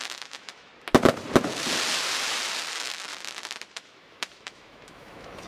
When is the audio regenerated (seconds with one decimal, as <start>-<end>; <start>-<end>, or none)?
0.0-0.7; 2.7-3.1; 3.7-5.5